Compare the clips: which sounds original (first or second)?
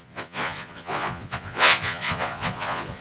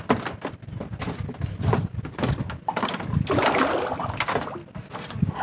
second